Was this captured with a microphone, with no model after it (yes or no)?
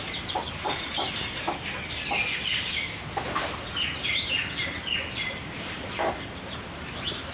yes